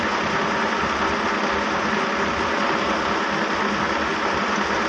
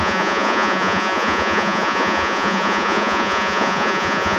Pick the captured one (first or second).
first